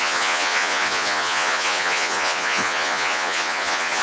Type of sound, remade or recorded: remade